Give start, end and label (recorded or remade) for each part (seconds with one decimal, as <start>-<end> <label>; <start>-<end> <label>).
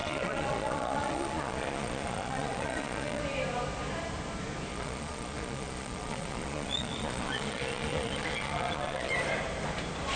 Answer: 0.0-3.2 remade; 3.2-4.7 recorded; 4.7-9.1 remade; 9.1-10.2 recorded